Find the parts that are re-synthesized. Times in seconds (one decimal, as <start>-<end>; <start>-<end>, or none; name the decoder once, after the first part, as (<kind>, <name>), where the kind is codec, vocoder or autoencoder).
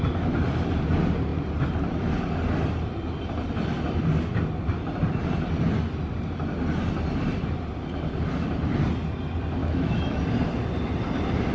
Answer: 9.6-10.2 (autoencoder, DAC-VAE)